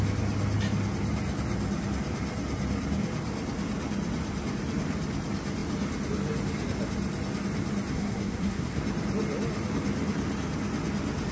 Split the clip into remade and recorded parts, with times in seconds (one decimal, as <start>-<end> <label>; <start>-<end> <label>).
0.0-7.9 recorded; 7.9-8.8 remade; 8.8-11.3 recorded